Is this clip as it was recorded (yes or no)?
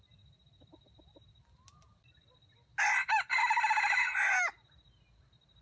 yes